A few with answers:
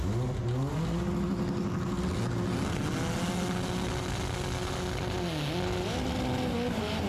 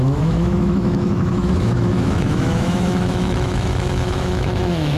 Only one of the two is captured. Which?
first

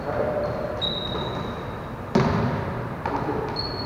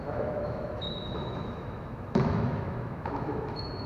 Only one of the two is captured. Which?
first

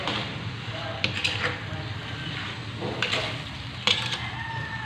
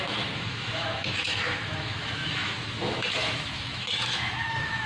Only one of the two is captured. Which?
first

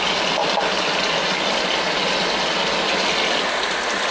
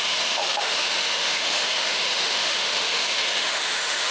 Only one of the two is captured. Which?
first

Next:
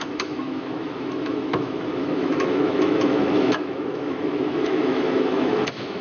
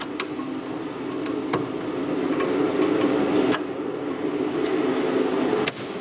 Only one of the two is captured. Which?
second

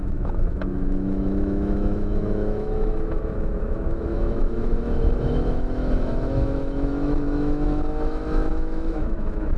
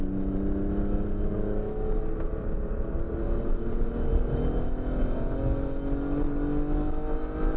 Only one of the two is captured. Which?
second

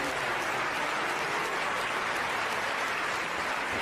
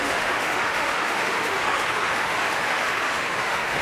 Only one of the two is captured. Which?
first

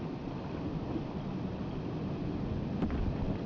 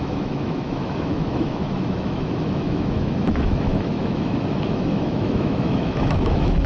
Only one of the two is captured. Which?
first